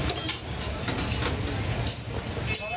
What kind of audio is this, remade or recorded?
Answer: recorded